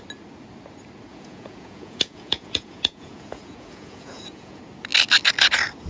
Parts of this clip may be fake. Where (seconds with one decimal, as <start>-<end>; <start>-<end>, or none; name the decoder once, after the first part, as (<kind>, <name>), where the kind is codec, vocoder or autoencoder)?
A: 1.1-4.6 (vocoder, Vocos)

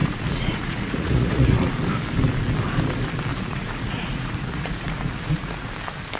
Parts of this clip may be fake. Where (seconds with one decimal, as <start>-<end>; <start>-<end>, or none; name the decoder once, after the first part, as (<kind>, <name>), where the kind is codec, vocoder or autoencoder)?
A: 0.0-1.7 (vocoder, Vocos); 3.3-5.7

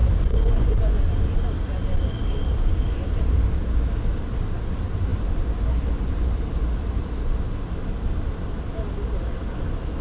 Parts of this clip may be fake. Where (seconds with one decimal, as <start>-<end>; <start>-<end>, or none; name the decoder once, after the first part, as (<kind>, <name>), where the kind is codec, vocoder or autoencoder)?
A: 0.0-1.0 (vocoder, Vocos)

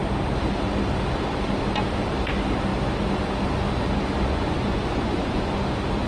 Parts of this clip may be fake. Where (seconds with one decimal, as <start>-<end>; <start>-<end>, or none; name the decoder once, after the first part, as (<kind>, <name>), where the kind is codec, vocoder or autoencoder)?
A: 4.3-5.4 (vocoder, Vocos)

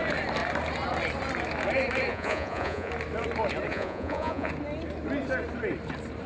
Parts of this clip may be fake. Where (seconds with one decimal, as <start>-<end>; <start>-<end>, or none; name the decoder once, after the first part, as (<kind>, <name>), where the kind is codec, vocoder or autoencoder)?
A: 2.1-2.9 (vocoder, Vocos); 3.7-4.5

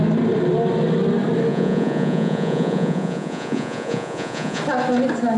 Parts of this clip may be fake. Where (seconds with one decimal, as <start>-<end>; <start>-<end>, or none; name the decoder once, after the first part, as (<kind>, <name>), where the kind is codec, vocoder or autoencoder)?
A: 1.5-4.6 (vocoder, Vocos)

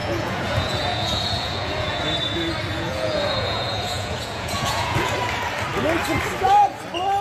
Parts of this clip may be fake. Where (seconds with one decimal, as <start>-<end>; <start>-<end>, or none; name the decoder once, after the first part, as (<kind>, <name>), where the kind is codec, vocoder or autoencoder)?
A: 0.0-2.0 (vocoder, Vocos); 2.7-5.1